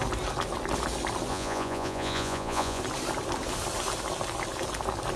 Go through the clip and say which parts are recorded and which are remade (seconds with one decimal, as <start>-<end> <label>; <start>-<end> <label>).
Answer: 0.0-1.3 recorded; 1.3-2.8 remade; 2.8-5.2 recorded